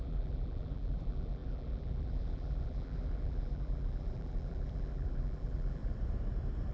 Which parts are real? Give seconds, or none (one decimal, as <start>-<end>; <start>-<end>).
5.8-6.7